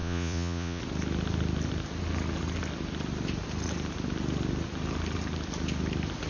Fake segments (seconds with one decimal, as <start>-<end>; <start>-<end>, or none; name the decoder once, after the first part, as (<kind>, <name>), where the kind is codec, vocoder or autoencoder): 0.0-0.8 (vocoder, Vocos)